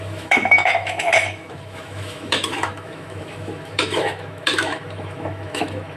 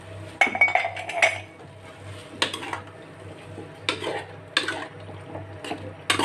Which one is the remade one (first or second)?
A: first